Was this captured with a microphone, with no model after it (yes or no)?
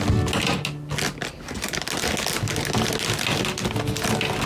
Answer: yes